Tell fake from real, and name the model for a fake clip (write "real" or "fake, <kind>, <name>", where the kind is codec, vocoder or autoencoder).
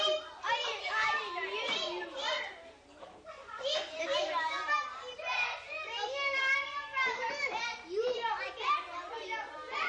fake, vocoder, BigVGAN v2